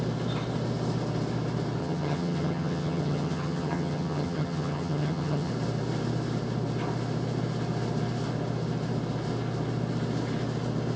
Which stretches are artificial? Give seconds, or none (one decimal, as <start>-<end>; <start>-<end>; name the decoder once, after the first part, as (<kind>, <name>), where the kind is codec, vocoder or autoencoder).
1.8-5.5 (vocoder, HiFi-GAN)